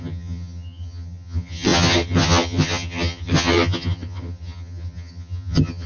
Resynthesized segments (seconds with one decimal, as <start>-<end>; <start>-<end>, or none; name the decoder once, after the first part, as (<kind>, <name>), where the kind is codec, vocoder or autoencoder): 0.0-5.9 (vocoder, HiFi-GAN)